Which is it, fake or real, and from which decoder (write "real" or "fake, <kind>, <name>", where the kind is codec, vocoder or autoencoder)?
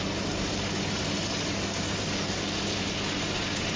real